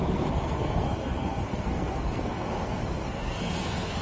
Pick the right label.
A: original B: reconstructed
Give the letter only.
B